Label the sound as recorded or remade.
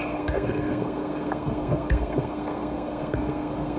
remade